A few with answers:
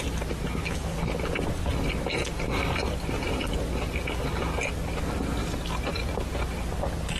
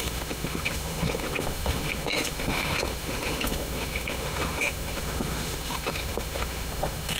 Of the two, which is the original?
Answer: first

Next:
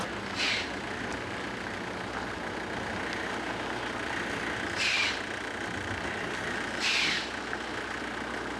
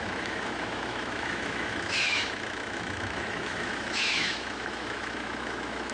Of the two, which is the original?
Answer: first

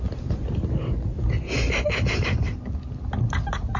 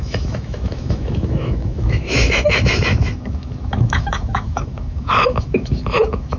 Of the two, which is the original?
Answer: first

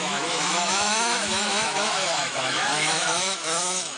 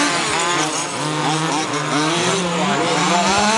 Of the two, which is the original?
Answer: second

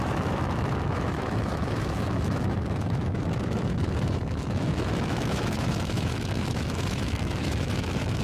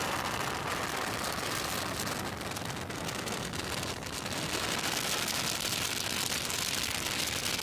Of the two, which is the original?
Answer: second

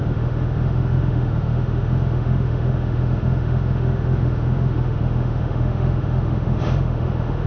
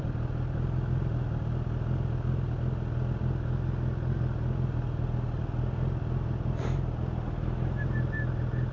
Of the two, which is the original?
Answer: second